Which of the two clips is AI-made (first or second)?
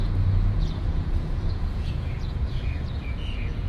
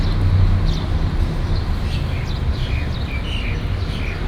first